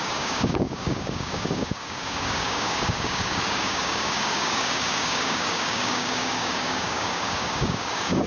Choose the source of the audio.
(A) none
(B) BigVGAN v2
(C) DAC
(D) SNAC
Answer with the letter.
C